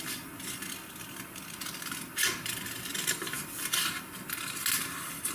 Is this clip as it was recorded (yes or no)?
yes